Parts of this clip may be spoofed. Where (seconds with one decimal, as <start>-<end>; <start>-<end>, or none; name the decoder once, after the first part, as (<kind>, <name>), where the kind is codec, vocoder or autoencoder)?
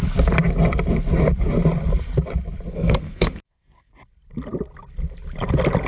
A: 2.7-3.9 (codec, SNAC)